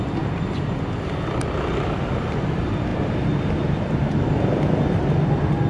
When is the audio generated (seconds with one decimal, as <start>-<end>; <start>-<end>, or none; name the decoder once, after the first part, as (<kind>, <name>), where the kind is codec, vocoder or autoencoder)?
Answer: none

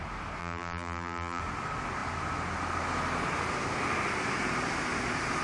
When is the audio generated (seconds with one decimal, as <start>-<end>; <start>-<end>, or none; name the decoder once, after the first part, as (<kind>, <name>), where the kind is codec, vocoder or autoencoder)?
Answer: 0.4-1.4 (vocoder, BigVGAN v2)

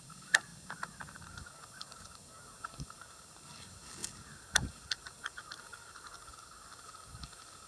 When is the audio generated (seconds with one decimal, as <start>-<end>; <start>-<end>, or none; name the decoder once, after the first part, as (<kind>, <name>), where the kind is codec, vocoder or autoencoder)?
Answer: 0.0-7.7 (codec, DAC)

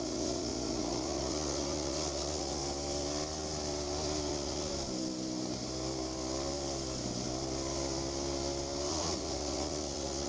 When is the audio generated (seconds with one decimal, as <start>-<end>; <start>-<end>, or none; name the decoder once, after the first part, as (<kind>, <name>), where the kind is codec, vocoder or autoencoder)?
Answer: 0.0-2.6 (vocoder, Vocos); 4.3-4.7; 8.9-10.3

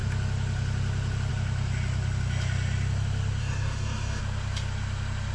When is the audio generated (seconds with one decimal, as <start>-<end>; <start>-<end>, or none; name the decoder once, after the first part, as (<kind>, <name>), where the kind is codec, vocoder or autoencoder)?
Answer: 3.4-4.2 (codec, DAC)